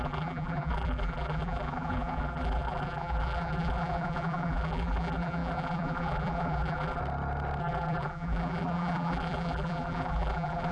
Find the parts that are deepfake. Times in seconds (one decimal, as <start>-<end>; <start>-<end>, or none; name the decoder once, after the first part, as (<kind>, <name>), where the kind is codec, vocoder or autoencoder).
0.0-7.0 (vocoder, BigVGAN v2); 7.6-10.7